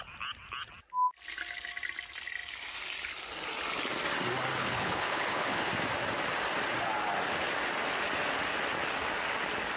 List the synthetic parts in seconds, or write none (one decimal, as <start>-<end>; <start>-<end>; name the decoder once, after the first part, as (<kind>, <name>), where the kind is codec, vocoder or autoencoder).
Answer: 4.6-5.7 (codec, HILCodec)